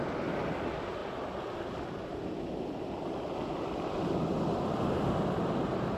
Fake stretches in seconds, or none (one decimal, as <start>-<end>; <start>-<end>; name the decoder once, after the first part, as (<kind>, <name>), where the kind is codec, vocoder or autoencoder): none